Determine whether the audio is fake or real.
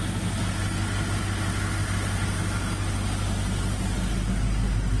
real